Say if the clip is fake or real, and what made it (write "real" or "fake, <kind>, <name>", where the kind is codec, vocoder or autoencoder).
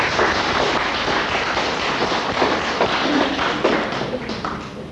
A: real